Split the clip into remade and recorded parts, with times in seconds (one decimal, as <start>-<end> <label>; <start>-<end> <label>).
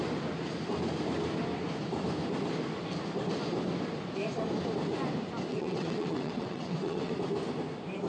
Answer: 0.0-5.5 recorded; 5.5-7.1 remade; 7.1-8.1 recorded